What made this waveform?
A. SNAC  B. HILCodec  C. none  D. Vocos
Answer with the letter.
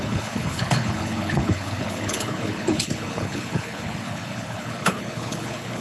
B